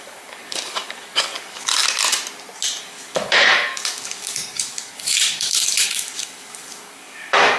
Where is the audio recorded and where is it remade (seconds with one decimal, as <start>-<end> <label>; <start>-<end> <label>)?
0.0-1.7 remade; 1.7-2.8 recorded; 2.8-7.6 remade